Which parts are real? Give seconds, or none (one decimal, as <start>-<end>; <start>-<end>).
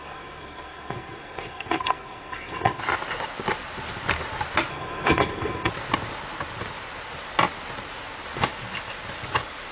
2.8-4.7; 5.7-9.7